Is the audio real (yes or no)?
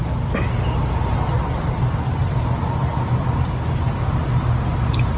yes